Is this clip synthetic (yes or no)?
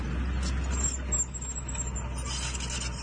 no